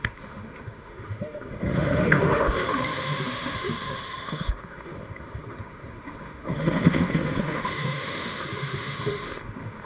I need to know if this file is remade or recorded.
remade